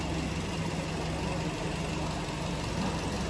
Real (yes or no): yes